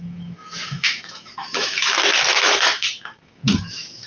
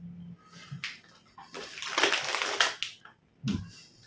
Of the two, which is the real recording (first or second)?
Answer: second